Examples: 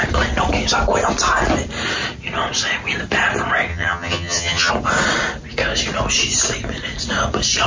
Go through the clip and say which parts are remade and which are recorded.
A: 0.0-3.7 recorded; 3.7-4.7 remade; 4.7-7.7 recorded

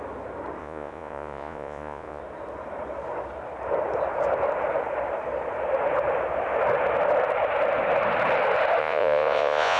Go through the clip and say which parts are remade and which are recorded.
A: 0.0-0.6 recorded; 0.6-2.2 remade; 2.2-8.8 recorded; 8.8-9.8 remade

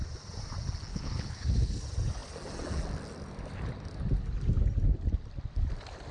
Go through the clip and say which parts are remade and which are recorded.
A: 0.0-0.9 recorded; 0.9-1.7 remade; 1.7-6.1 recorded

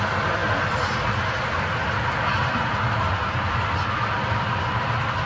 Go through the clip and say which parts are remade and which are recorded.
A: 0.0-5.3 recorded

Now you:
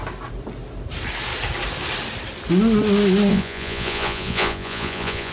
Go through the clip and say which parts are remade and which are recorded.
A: 0.0-3.3 recorded; 3.3-5.3 remade

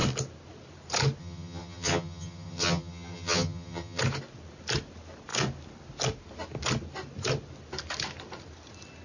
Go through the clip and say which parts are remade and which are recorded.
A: 0.0-1.2 recorded; 1.2-4.0 remade; 4.0-9.0 recorded

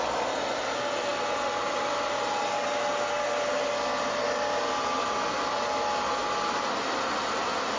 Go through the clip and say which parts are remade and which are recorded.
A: 0.0-7.8 recorded

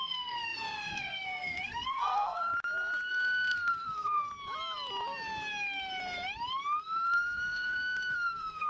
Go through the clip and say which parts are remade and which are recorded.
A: 0.0-2.5 remade; 2.5-3.1 recorded; 3.1-4.3 remade; 4.3-6.8 recorded; 6.8-8.7 remade